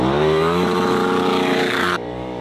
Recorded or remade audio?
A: remade